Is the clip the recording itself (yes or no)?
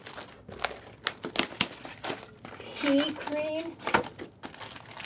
yes